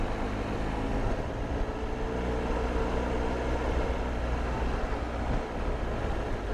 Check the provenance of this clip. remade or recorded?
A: recorded